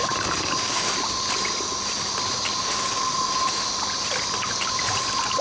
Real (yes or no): yes